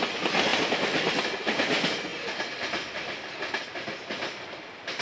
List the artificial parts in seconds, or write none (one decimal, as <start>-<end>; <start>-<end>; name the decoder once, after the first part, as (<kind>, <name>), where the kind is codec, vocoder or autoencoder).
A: none